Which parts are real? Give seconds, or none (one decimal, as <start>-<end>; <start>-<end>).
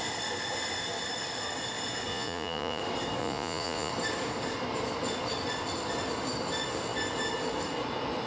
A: 0.0-2.1; 2.8-3.2; 3.9-8.3